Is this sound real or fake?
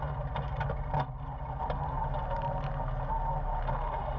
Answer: real